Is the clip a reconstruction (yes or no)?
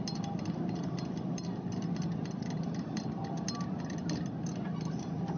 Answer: no